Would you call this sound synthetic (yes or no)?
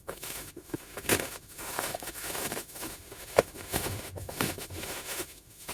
yes